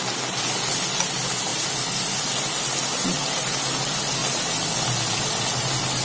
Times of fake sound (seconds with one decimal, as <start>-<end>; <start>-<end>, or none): none